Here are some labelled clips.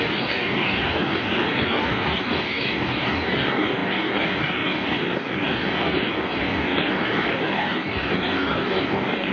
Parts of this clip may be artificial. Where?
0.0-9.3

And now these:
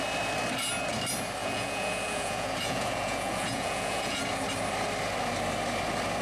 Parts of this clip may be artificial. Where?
1.4-4.2

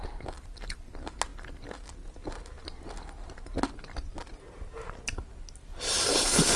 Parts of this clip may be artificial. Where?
5.7-6.6

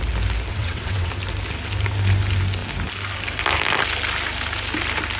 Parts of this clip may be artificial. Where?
0.5-1.1